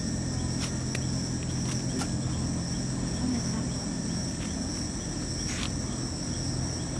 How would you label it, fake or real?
real